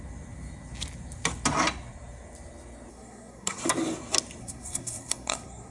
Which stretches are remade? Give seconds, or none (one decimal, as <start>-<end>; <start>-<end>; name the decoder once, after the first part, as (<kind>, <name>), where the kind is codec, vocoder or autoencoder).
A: 2.9-3.6 (codec, SNAC); 4.4-5.7